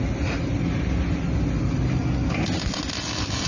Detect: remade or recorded recorded